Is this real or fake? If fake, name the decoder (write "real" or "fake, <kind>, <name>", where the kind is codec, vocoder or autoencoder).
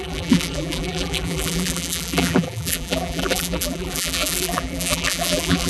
fake, vocoder, BigVGAN v2